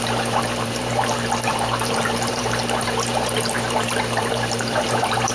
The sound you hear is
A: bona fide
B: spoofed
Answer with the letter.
B